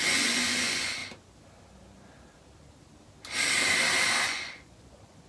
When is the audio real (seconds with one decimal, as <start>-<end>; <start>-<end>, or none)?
1.0-4.2